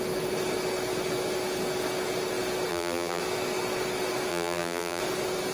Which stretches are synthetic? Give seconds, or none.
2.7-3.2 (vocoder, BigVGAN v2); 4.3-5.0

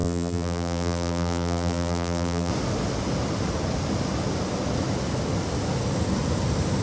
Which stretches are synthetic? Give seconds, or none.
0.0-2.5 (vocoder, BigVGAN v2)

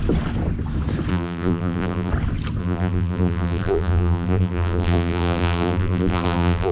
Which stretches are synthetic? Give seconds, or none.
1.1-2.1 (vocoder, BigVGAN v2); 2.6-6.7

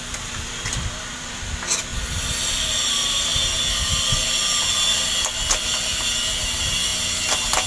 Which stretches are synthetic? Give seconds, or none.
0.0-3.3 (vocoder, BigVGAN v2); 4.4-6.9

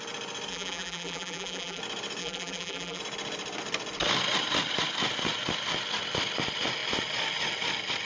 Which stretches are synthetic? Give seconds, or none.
0.5-1.8 (vocoder, BigVGAN v2); 2.2-3.0

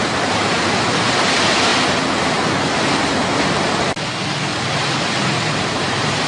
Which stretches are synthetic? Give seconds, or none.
0.5-1.7 (vocoder, BigVGAN v2); 5.2-6.3

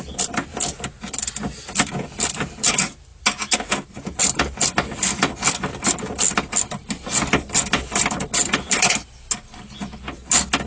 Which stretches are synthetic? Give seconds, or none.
none

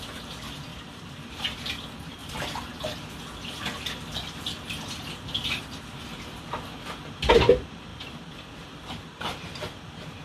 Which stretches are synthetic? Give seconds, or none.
0.7-1.3 (vocoder, BigVGAN v2); 7.9-9.6